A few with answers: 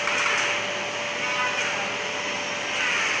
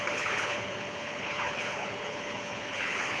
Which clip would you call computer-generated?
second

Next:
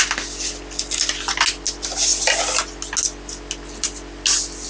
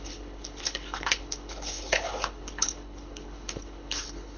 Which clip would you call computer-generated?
second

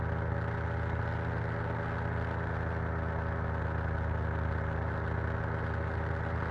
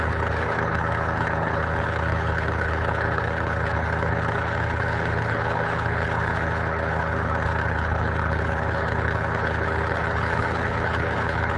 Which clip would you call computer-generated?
second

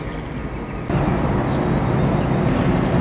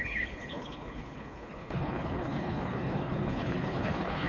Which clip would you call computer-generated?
second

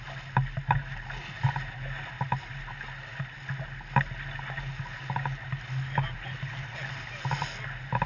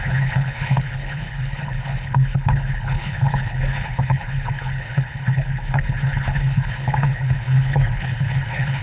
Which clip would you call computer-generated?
second